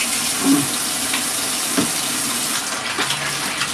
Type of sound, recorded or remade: recorded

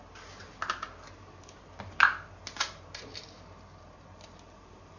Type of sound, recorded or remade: recorded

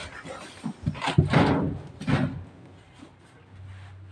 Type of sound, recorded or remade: recorded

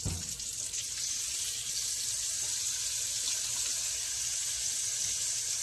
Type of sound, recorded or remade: recorded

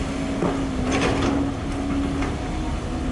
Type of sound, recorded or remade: recorded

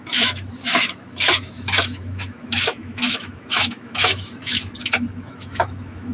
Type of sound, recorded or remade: remade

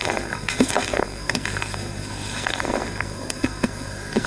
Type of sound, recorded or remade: remade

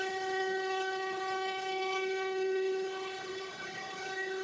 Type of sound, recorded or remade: remade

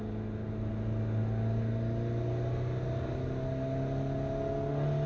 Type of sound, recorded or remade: recorded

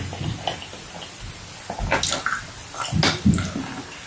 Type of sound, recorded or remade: recorded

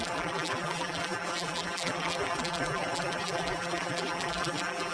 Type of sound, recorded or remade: remade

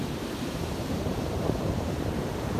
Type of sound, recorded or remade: remade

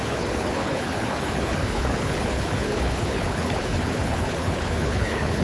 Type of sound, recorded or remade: remade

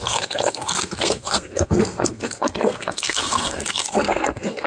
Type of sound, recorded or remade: remade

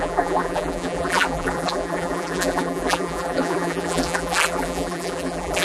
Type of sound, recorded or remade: remade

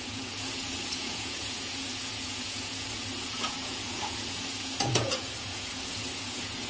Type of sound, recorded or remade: remade